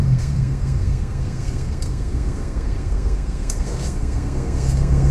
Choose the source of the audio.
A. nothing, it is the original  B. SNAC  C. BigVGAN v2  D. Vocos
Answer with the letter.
B